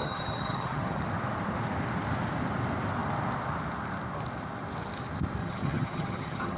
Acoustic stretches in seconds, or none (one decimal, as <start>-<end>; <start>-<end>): 1.0-5.4